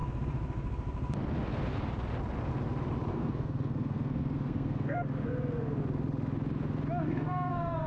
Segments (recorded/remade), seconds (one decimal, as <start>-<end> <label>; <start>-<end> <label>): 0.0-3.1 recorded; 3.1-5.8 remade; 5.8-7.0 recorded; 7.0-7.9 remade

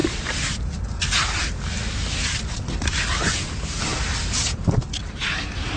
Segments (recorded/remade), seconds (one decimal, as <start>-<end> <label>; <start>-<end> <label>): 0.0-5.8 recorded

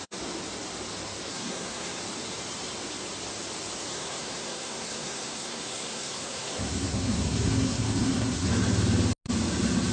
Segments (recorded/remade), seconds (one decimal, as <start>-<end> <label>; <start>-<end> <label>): 0.0-1.3 recorded; 1.3-2.0 remade; 2.0-3.9 recorded; 3.9-8.5 remade; 8.5-9.9 recorded

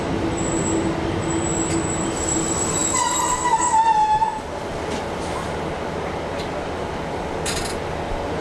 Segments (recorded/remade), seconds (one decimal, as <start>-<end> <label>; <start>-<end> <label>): 0.0-8.4 recorded

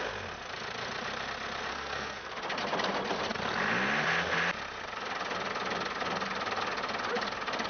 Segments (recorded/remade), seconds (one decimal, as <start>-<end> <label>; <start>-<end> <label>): 0.0-1.7 recorded; 1.7-2.3 remade; 2.3-7.7 recorded